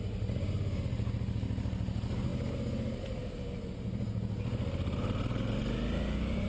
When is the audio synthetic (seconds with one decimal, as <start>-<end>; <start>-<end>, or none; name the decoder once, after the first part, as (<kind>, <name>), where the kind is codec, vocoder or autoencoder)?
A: none